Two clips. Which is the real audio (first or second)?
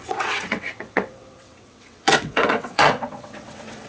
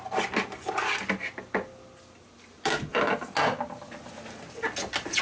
second